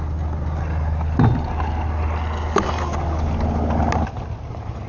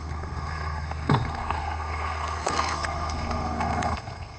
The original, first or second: first